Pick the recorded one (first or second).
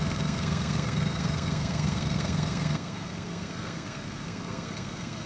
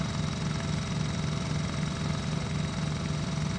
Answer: second